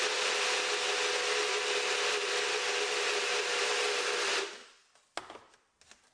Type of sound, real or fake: real